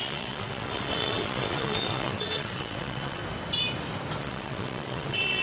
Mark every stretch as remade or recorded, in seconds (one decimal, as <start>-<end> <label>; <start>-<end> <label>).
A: 0.0-3.2 remade; 3.2-4.2 recorded; 4.2-5.4 remade